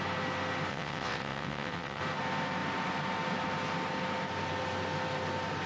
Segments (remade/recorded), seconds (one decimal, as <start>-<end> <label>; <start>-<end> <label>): 0.0-0.7 recorded; 0.7-2.0 remade; 2.0-5.7 recorded